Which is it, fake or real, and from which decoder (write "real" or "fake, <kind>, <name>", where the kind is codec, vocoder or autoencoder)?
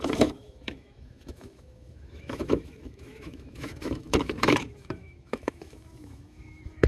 fake, autoencoder, DAC-VAE